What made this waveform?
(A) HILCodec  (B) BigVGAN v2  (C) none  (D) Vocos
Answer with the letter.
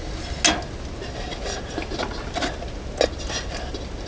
C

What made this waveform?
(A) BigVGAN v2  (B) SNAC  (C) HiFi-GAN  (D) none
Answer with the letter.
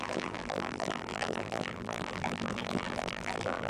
A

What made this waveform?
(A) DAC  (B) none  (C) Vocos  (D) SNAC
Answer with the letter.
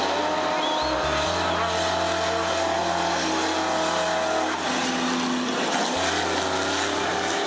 B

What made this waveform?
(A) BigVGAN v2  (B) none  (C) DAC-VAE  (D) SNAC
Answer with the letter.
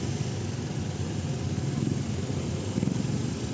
B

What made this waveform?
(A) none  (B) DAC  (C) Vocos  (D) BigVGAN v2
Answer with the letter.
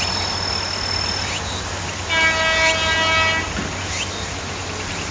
A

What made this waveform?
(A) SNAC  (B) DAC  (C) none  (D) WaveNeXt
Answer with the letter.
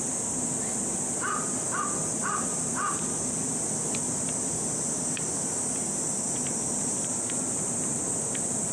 C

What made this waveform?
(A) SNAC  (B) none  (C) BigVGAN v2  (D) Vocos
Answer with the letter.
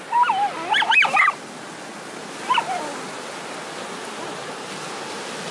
B